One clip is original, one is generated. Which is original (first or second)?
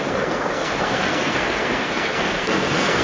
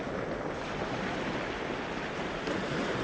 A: second